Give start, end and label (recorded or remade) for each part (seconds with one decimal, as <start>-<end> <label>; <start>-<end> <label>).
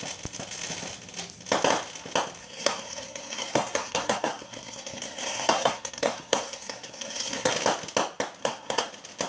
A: 0.0-2.4 recorded; 2.4-7.5 remade; 7.5-8.4 recorded; 8.4-8.9 remade; 8.9-9.3 recorded